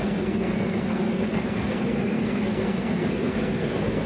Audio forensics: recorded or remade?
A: remade